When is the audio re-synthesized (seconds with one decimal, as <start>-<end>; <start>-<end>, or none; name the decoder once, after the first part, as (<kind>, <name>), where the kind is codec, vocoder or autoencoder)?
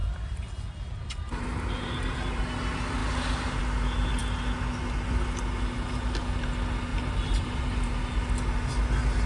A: 0.0-2.4 (vocoder, BigVGAN v2); 3.0-3.6; 6.9-8.0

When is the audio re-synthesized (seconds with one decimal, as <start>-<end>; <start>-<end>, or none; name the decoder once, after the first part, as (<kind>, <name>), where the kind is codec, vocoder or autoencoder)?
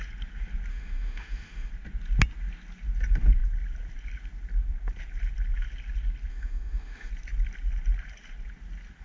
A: 0.7-1.7 (autoencoder, DAC-VAE); 6.3-7.1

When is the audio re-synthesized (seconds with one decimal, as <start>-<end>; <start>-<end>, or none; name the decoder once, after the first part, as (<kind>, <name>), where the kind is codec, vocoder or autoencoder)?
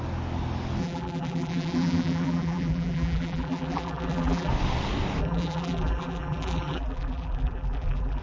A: 0.8-4.5 (vocoder, BigVGAN v2); 5.2-8.2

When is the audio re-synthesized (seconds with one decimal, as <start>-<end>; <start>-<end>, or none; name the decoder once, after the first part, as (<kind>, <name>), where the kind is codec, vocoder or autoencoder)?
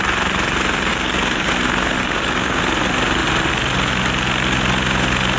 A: 0.9-1.5 (codec, DAC); 2.0-2.6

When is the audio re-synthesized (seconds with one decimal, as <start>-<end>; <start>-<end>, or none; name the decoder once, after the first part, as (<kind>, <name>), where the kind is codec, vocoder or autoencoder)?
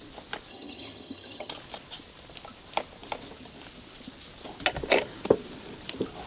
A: 0.5-1.5 (vocoder, HiFi-GAN)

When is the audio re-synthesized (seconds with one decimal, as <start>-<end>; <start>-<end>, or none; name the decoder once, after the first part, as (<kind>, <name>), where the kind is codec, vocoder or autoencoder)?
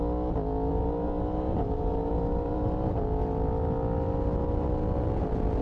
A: 0.7-2.9 (vocoder, BigVGAN v2)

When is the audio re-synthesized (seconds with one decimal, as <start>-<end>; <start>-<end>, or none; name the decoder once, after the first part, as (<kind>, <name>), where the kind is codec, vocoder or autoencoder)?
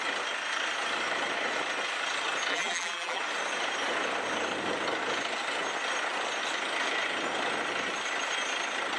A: 2.5-3.2 (vocoder, BigVGAN v2)